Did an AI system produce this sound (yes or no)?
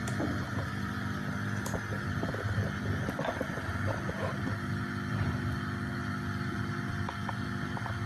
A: no